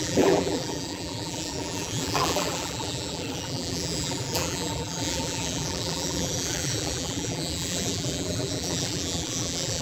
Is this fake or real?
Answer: fake